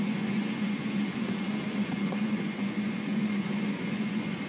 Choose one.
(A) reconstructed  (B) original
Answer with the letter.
A